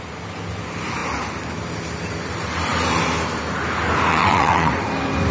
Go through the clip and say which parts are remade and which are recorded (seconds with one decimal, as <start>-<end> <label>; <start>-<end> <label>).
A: 0.0-4.1 recorded; 4.1-4.7 remade; 4.7-5.3 recorded